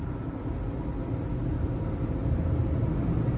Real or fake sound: real